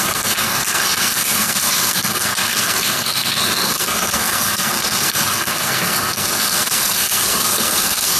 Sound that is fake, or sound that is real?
fake